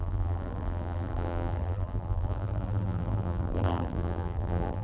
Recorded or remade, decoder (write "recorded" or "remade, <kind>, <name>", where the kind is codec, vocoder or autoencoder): remade, vocoder, BigVGAN v2